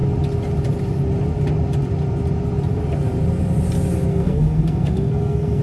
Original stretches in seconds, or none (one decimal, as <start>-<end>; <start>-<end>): 0.0-4.1

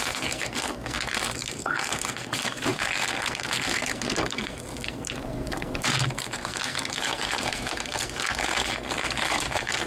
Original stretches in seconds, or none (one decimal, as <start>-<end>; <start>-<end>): none

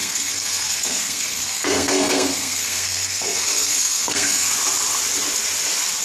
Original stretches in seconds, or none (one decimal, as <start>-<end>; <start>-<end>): 4.5-6.0

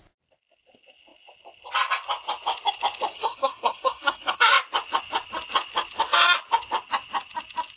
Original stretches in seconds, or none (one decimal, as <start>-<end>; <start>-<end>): 0.0-3.1; 4.5-7.8